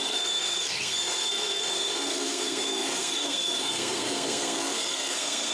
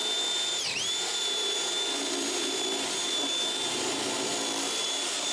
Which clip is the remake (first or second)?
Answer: first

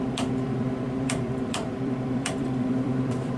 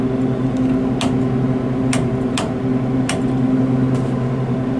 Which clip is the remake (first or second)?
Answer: first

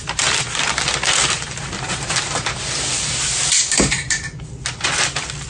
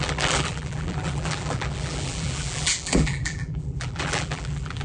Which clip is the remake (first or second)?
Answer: second